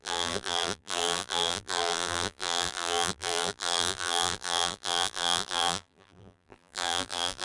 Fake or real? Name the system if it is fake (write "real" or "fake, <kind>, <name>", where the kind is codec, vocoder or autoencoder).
fake, vocoder, BigVGAN v2